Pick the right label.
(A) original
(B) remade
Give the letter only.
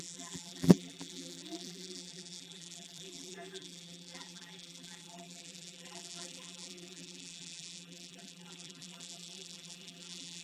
B